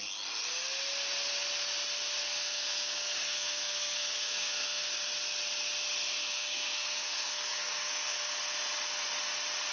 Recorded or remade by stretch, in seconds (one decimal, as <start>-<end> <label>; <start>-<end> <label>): 0.0-2.2 recorded; 2.2-4.8 remade; 4.8-6.2 recorded; 6.2-8.3 remade; 8.3-9.7 recorded